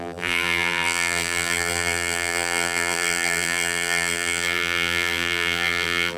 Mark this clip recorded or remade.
remade